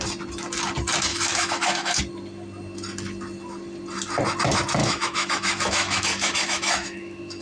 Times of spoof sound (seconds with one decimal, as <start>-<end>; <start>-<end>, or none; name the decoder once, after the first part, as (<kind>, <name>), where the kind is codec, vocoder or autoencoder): 1.1-2.0 (autoencoder, DAC-VAE); 4.8-7.4